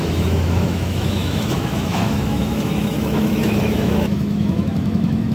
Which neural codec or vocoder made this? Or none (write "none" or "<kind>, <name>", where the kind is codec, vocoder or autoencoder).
autoencoder, DAC-VAE